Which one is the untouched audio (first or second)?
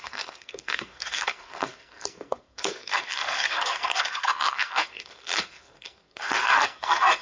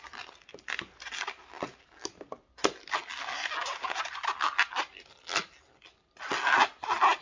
second